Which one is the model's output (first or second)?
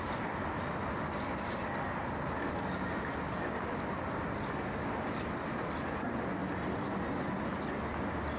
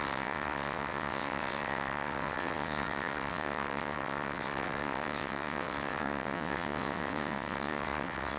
second